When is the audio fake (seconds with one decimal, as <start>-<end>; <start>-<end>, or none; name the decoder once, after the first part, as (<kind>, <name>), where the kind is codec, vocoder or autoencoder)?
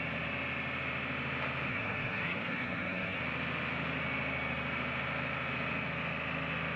1.7-3.2 (codec, SNAC)